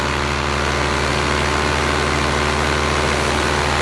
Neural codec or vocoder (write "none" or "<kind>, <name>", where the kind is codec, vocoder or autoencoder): none